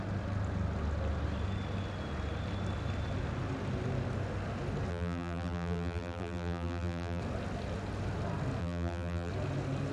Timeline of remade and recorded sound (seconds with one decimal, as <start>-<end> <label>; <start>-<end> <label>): 0.0-4.9 recorded; 4.9-7.2 remade; 7.2-8.6 recorded; 8.6-9.3 remade; 9.3-9.9 recorded